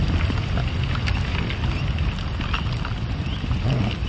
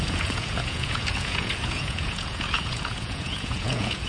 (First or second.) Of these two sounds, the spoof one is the second